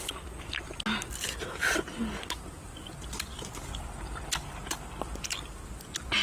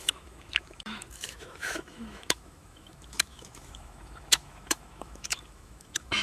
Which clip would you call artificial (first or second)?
second